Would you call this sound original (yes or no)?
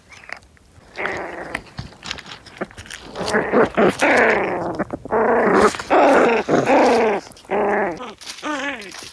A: yes